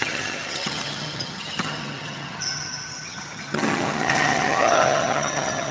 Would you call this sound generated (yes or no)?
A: yes